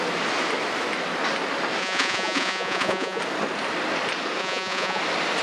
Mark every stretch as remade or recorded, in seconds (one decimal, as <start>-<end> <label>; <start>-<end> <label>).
0.0-1.8 recorded; 1.8-3.2 remade; 3.2-4.4 recorded; 4.4-5.0 remade; 5.0-5.4 recorded